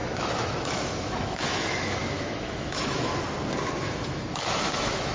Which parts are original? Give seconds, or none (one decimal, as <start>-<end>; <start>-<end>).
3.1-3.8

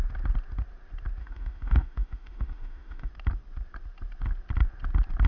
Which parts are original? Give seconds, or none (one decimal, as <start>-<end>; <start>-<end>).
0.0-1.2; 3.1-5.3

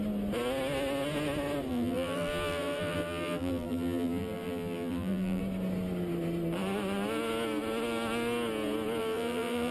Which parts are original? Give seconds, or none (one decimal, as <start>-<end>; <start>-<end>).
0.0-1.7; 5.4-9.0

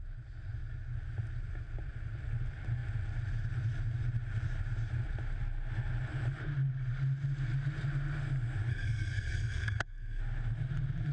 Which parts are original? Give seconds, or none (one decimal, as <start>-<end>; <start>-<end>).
0.0-8.7; 10.2-11.1

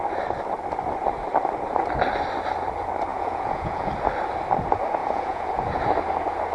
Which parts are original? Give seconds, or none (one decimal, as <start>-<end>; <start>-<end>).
0.0-3.1; 3.9-5.0; 5.8-6.5

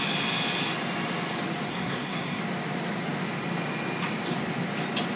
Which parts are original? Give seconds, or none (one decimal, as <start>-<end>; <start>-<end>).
0.0-1.7; 2.4-5.2